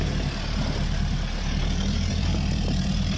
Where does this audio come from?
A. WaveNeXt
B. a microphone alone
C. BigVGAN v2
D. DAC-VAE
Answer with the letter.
C